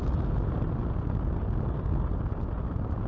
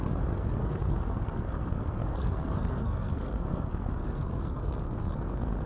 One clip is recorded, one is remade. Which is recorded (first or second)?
first